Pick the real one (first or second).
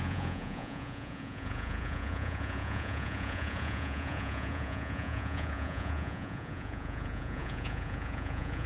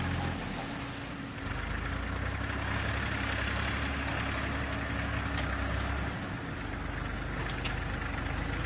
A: second